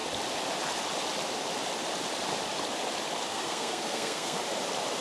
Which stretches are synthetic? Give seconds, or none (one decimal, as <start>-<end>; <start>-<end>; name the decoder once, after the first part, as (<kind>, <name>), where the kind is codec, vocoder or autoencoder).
3.3-4.4 (codec, SNAC)